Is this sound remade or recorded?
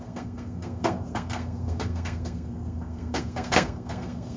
remade